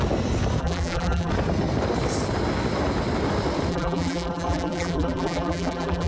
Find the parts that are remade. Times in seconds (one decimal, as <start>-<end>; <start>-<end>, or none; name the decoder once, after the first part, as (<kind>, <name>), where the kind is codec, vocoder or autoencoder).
0.6-1.3 (vocoder, BigVGAN v2); 3.7-6.1